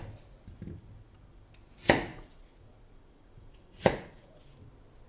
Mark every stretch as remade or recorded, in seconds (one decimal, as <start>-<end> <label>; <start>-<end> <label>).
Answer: 0.0-2.1 recorded; 2.1-4.4 remade; 4.4-5.1 recorded

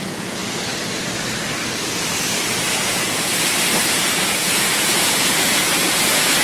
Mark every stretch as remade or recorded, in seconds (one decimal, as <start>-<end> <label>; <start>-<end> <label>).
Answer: 0.0-0.4 remade; 0.4-2.7 recorded; 2.7-3.3 remade; 3.3-3.8 recorded; 3.8-6.4 remade

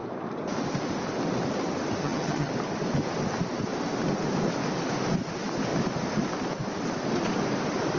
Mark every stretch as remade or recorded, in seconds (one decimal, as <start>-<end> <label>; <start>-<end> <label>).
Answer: 0.0-2.0 recorded; 2.0-2.5 remade; 2.5-8.0 recorded

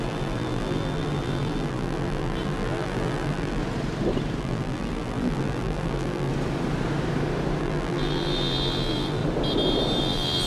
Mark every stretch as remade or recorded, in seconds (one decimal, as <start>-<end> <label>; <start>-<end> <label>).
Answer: 0.0-3.6 remade; 3.6-4.4 recorded; 4.4-6.3 remade; 6.3-7.6 recorded; 7.6-9.2 remade; 9.2-10.0 recorded; 10.0-10.5 remade